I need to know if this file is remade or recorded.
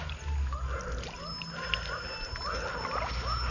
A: recorded